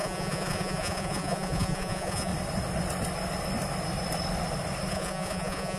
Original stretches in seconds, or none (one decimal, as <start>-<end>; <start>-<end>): 2.3-4.9